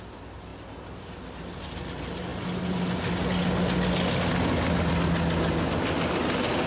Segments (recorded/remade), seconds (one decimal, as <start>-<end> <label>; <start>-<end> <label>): 0.0-6.7 recorded